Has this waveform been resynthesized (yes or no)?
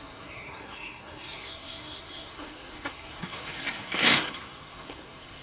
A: yes